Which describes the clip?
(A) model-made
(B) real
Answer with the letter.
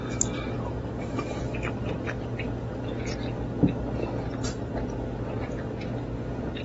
B